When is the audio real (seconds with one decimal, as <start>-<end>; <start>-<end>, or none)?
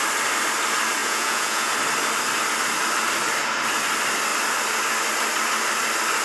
0.0-1.0; 1.7-6.2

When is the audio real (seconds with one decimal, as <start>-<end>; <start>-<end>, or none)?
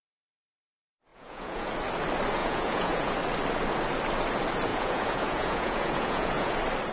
0.0-1.1; 1.7-2.4; 3.1-4.7; 6.5-6.9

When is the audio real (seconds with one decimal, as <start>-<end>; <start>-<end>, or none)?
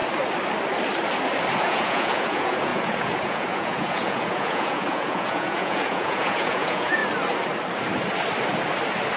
0.0-1.6; 7.0-9.2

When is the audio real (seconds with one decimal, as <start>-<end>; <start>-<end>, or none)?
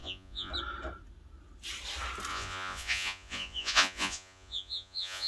0.5-2.3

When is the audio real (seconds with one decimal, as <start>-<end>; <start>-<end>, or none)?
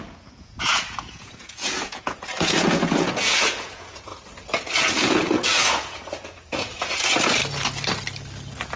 4.1-4.8; 7.4-8.8